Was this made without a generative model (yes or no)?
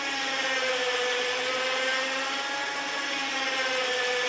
yes